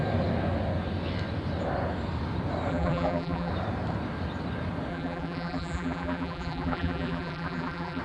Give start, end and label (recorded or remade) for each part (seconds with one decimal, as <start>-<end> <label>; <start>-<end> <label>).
0.0-2.7 recorded; 2.7-3.5 remade; 3.5-4.9 recorded; 4.9-8.0 remade